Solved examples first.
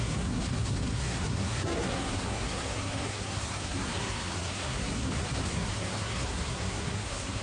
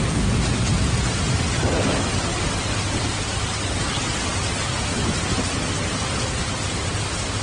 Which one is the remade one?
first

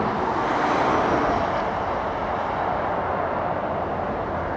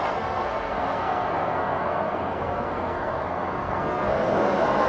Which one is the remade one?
second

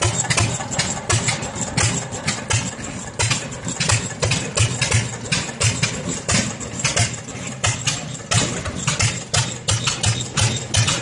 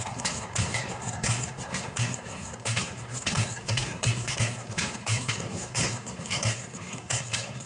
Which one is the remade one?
second